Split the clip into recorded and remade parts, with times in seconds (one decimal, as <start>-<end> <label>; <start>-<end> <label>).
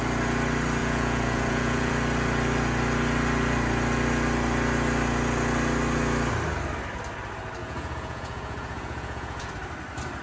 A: 0.0-0.8 recorded; 0.8-1.9 remade; 1.9-7.6 recorded; 7.6-9.5 remade; 9.5-10.2 recorded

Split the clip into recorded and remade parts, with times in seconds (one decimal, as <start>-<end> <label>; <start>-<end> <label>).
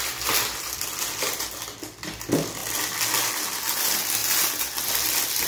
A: 0.0-4.2 recorded; 4.2-4.9 remade; 4.9-5.5 recorded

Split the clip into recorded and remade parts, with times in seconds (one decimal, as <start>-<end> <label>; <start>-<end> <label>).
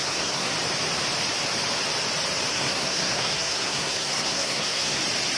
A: 0.0-0.5 remade; 0.5-2.5 recorded; 2.5-5.0 remade; 5.0-5.4 recorded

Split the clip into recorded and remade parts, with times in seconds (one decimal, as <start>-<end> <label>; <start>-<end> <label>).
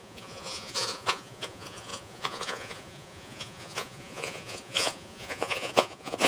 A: 0.0-6.3 remade